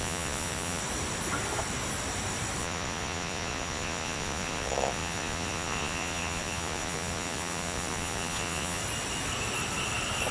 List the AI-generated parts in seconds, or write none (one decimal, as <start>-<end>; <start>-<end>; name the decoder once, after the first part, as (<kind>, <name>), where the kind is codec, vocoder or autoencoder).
0.0-0.8 (vocoder, Vocos); 2.6-8.8